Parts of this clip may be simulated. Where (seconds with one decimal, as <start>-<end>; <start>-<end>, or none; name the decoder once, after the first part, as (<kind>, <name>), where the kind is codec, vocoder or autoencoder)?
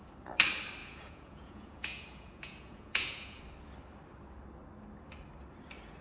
0.8-3.4 (vocoder, Vocos)